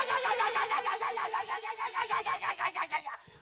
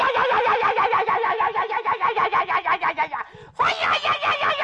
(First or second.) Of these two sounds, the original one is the second